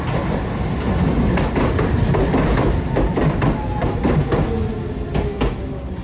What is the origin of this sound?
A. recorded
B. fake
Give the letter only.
A